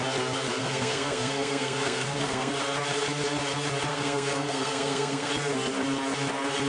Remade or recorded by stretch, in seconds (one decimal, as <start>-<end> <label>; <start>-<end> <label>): 0.0-0.6 recorded; 0.6-2.6 remade; 2.6-3.9 recorded; 3.9-5.3 remade; 5.3-6.7 recorded